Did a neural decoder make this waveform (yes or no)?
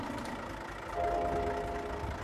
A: no